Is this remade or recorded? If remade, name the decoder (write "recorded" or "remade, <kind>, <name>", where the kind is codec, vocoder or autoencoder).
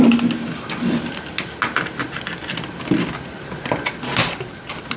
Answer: recorded